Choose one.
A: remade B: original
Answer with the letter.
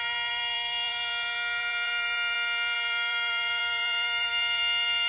A